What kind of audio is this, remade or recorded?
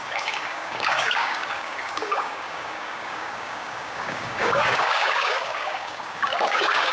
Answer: remade